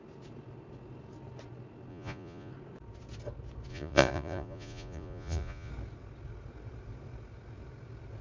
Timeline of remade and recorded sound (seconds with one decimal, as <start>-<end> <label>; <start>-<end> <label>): 0.0-1.9 recorded; 1.9-2.5 remade; 2.5-3.7 recorded; 3.7-5.7 remade; 5.7-8.2 recorded